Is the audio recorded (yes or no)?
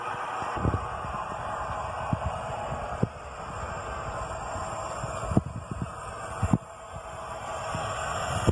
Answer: yes